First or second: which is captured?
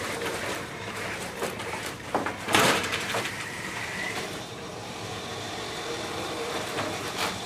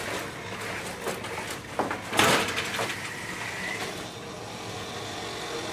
second